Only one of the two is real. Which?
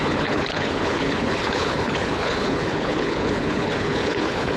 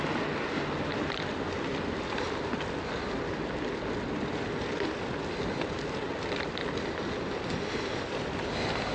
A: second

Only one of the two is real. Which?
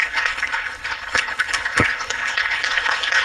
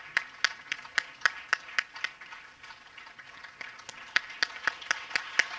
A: second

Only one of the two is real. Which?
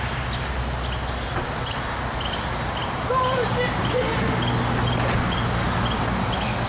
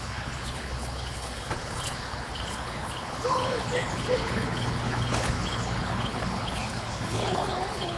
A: first